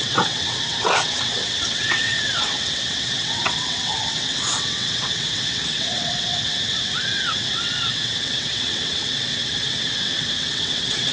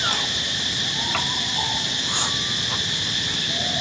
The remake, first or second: first